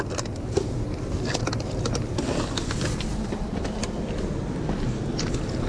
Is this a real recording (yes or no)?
yes